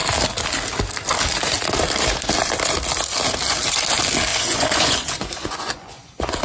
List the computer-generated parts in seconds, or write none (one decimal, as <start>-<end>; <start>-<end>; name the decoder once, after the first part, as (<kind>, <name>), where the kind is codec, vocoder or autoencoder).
4.3-6.4 (vocoder, Vocos)